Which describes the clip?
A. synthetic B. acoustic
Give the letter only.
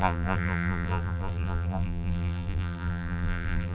A